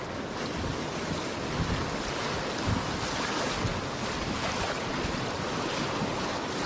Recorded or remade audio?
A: recorded